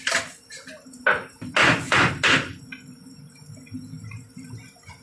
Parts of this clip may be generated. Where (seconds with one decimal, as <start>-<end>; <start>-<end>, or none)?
1.6-2.1